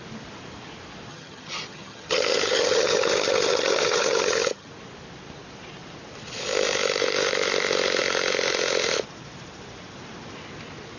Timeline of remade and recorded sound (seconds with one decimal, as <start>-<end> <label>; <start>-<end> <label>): 0.0-1.1 recorded; 1.1-4.7 remade; 4.7-11.0 recorded